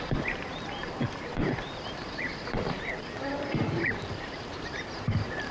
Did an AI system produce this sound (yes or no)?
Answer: yes